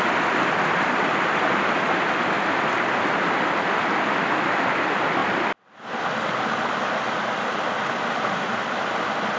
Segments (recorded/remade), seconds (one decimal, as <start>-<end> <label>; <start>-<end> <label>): 0.0-9.4 recorded